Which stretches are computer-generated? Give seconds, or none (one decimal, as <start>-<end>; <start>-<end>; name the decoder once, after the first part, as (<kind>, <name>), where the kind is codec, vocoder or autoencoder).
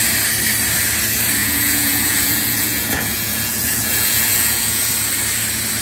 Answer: 1.4-4.9 (vocoder, Vocos)